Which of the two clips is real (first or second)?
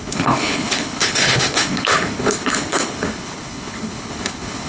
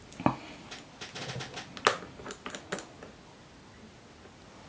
second